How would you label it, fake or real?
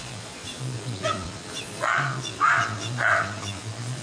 fake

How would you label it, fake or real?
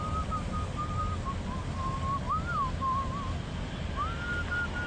real